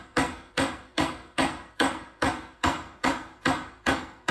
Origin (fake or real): fake